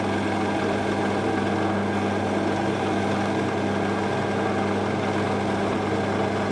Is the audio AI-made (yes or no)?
no